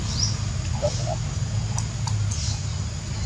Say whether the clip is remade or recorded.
recorded